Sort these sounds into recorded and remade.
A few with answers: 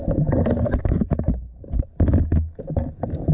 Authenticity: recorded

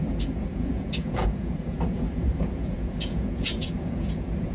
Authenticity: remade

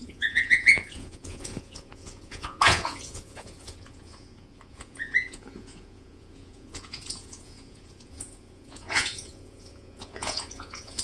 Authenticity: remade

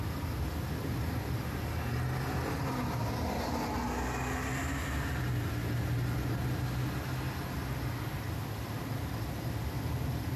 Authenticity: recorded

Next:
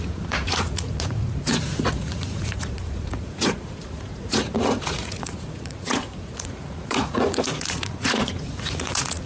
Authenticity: remade